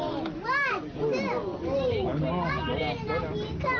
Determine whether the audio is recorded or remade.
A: recorded